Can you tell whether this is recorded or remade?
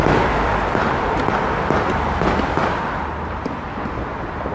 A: remade